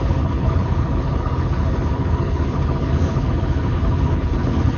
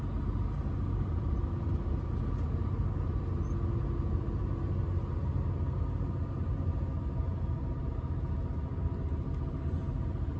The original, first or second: second